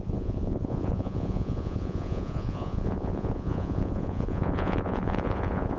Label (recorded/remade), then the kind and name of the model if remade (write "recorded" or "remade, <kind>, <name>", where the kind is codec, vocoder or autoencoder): remade, vocoder, Vocos